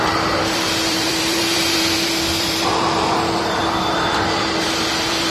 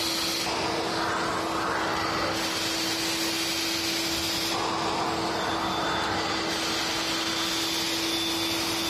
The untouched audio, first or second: second